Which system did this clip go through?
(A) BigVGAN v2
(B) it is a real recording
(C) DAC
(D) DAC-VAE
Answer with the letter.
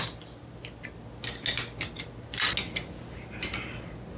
B